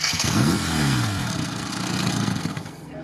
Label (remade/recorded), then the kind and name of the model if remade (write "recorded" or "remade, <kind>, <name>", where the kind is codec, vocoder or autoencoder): remade, codec, SNAC